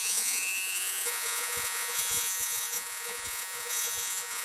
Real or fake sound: fake